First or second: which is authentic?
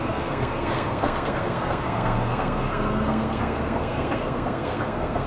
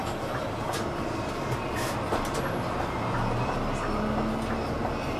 second